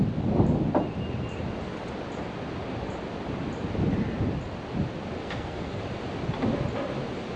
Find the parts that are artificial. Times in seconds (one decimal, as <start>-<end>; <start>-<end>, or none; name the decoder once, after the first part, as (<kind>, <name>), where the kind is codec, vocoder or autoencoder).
5.2-5.8 (codec, SNAC)